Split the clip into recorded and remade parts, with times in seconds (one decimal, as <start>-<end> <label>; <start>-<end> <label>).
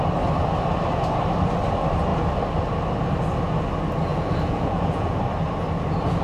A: 0.0-4.1 recorded; 4.1-5.2 remade; 5.2-6.2 recorded